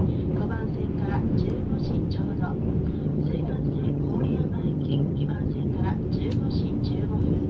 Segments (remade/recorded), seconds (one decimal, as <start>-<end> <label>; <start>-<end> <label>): 0.0-3.0 recorded; 3.0-5.7 remade; 5.7-7.5 recorded